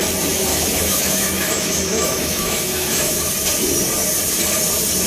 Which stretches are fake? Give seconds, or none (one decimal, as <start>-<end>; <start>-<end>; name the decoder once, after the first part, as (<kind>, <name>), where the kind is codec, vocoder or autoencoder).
0.5-3.3 (autoencoder, DAC-VAE)